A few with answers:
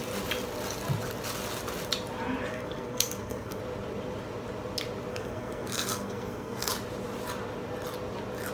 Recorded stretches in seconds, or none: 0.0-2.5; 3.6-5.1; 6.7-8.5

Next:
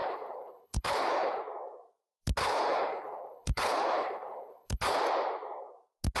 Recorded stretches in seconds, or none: 1.4-2.4; 5.0-6.2

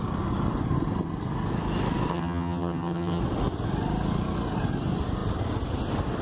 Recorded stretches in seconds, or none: 0.0-2.1; 3.2-6.2